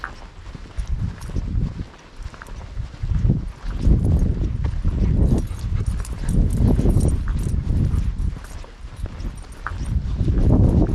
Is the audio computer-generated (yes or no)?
no